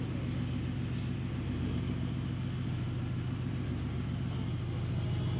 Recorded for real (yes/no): yes